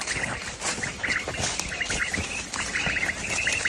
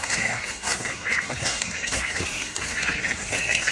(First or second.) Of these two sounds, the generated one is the second